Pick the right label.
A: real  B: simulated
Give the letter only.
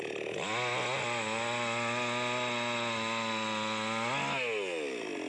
A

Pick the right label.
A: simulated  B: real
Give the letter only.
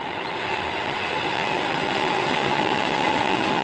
A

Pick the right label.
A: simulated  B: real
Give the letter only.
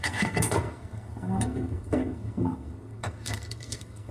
A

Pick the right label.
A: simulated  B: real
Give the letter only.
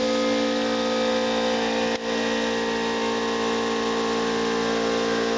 B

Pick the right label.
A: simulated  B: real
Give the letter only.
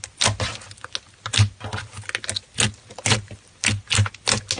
B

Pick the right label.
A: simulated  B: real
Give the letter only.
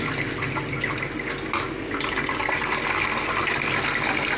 B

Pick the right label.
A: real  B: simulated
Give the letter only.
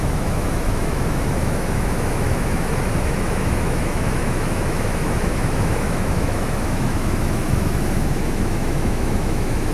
B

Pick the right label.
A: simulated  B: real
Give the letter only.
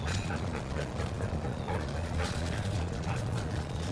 A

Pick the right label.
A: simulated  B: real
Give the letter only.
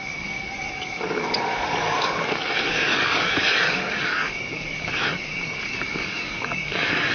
A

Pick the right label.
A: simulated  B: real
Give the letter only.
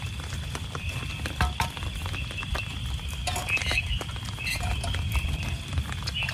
B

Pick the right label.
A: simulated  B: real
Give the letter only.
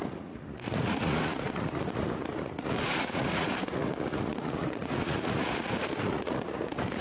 A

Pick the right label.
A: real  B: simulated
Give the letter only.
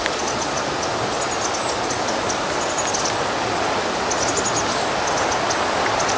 A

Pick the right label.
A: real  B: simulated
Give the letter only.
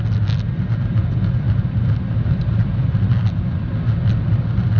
A